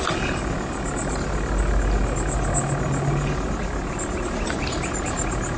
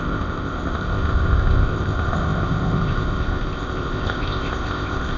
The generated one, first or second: second